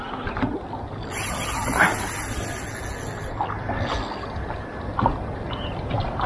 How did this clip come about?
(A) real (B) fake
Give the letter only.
A